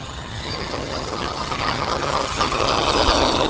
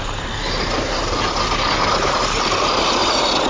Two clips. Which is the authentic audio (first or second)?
second